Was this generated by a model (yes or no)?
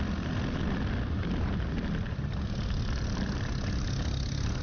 no